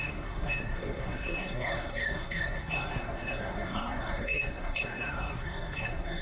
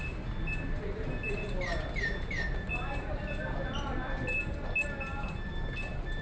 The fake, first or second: first